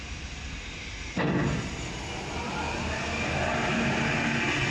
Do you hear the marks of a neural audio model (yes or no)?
no